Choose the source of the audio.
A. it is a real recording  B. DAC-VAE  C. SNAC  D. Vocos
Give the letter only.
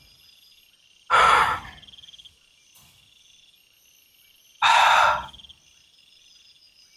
A